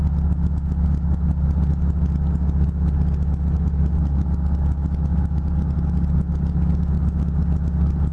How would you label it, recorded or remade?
recorded